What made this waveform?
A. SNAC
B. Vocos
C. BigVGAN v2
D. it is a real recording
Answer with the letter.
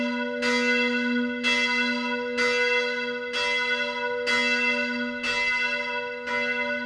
D